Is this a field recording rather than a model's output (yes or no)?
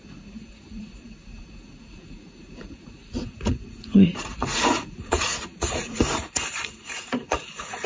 no